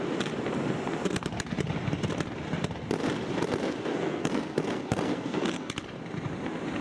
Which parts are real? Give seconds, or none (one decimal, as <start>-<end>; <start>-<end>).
0.0-3.9; 5.7-6.8